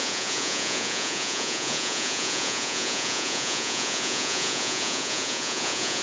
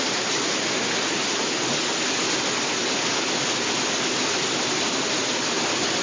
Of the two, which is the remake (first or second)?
first